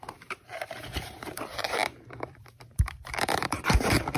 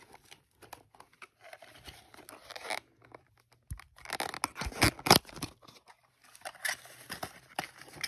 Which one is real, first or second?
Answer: second